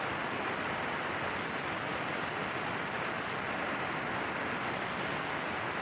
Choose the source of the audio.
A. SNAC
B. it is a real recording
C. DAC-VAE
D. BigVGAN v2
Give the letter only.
B